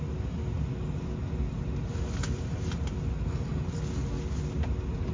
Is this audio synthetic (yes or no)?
no